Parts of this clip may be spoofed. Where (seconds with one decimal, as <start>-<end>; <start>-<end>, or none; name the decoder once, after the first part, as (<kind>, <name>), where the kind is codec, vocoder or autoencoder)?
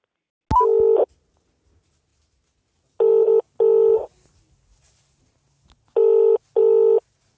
none